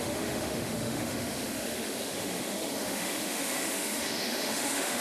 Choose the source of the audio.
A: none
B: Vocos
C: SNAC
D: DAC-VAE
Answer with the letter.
D